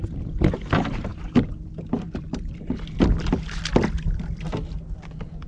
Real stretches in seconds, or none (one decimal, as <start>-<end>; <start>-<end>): 0.0-5.5